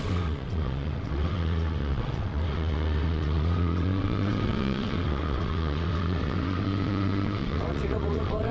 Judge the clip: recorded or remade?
remade